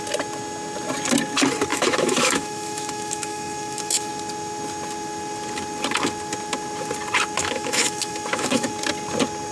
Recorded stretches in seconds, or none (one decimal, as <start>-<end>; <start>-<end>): 0.0-1.7; 4.1-7.4; 8.7-9.5